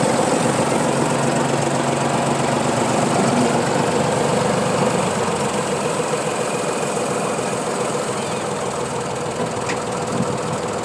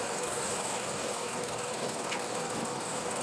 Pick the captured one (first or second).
first